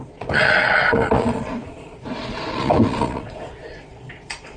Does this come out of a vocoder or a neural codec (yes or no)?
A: yes